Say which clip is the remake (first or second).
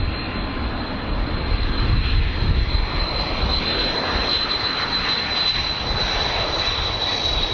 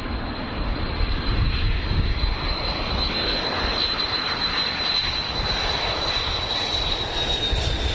second